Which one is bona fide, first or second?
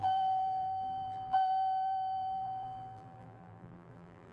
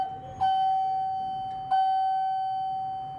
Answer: second